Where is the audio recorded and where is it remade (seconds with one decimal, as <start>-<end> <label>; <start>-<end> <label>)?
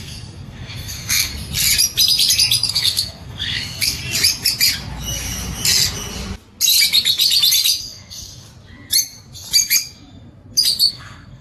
0.0-1.3 remade; 1.3-2.7 recorded; 2.7-4.0 remade; 4.0-7.8 recorded; 7.8-8.5 remade; 8.5-10.9 recorded; 10.9-11.4 remade